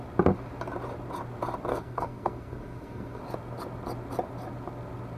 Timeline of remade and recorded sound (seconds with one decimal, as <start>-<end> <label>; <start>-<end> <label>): 0.0-1.7 recorded; 1.7-3.2 remade; 3.2-5.2 recorded